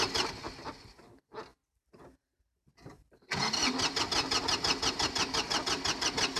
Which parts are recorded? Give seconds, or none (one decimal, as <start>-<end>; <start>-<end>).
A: none